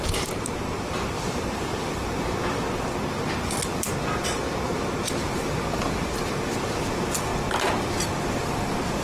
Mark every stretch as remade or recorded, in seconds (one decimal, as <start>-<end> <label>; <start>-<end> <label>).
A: 0.0-2.0 remade; 2.0-5.1 recorded; 5.1-7.3 remade; 7.3-7.8 recorded; 7.8-9.0 remade